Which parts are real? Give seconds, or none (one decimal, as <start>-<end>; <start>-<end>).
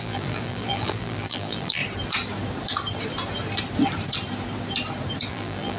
1.8-5.3